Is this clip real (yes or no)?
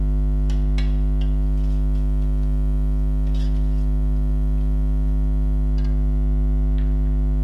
yes